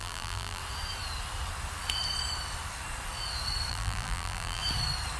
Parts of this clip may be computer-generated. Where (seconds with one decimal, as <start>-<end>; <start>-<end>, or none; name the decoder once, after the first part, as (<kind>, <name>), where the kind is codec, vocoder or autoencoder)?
0.0-0.6 (vocoder, BigVGAN v2); 3.7-4.6